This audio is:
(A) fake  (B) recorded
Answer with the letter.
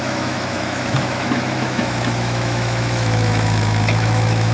A